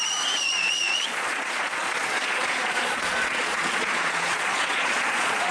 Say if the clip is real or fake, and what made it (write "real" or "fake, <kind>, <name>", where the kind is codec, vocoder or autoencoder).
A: fake, vocoder, Vocos